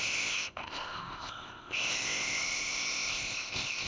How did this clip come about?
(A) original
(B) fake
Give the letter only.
B